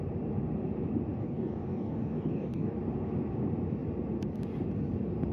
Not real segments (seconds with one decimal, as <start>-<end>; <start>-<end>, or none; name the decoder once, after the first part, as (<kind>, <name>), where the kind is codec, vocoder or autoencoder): 1.2-2.7 (codec, DAC)